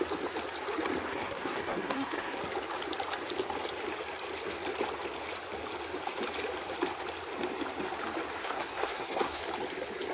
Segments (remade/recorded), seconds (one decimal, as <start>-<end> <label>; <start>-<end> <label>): 0.0-1.1 recorded; 1.1-2.4 remade; 2.4-8.4 recorded; 8.4-9.4 remade; 9.4-10.1 recorded